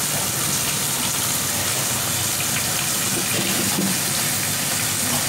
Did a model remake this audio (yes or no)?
no